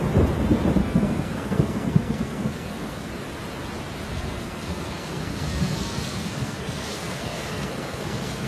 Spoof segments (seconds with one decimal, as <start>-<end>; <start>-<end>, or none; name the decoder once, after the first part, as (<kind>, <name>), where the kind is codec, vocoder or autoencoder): 0.8-3.1 (codec, SNAC); 4.1-8.5